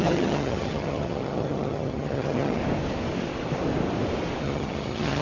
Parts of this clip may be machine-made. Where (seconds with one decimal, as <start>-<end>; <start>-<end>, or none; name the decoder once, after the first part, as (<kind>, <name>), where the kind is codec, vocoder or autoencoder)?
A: 0.0-2.6 (vocoder, HiFi-GAN); 4.4-5.2